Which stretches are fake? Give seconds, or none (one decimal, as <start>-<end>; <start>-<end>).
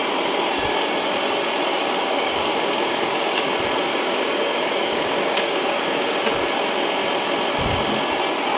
1.7-3.5; 3.9-6.1